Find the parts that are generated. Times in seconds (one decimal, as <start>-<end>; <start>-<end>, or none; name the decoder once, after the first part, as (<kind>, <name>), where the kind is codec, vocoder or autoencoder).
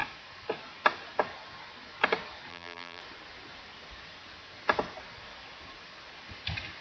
2.5-3.0 (vocoder, BigVGAN v2)